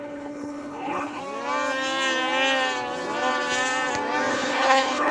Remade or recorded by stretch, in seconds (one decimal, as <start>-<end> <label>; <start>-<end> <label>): 0.0-1.2 remade; 1.2-4.3 recorded; 4.3-5.1 remade